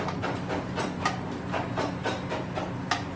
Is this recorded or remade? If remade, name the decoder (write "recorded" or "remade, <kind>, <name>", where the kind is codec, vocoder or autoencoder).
recorded